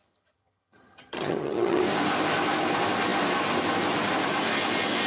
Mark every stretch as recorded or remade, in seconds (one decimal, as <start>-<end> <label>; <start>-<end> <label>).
0.0-1.8 remade; 1.8-5.1 recorded